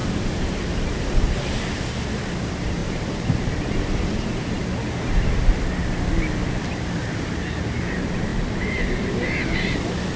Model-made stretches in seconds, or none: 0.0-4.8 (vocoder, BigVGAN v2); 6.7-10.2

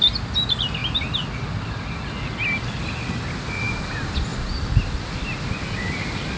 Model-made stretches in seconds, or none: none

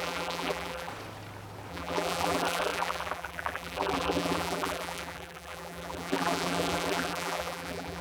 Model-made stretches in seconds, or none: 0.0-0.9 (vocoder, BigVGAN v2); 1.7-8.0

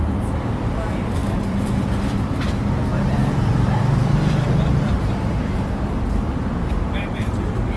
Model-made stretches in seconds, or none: 1.2-2.0 (vocoder, BigVGAN v2); 3.2-7.2

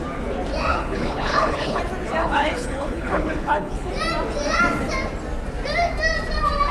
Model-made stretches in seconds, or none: 0.7-1.8 (codec, HILCodec); 2.2-3.9

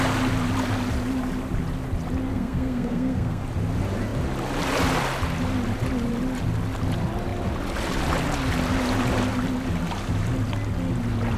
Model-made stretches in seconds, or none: 2.3-3.4 (codec, SNAC)

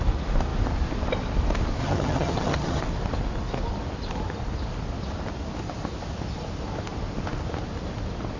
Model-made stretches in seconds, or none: 1.8-2.8 (vocoder, HiFi-GAN)

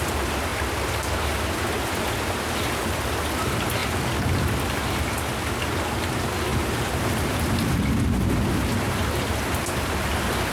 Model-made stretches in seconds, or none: 6.5-7.7 (vocoder, BigVGAN v2)